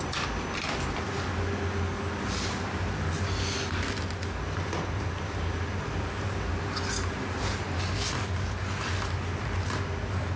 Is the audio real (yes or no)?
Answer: yes